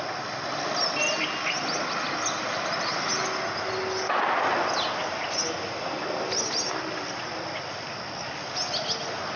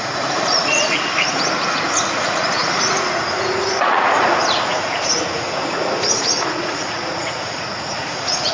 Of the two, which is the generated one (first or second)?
second